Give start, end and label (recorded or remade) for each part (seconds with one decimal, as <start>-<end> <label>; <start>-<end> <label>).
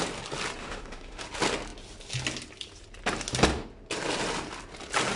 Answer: 0.0-0.6 recorded; 0.6-1.2 remade; 1.2-5.2 recorded